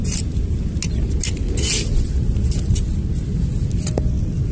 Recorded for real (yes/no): yes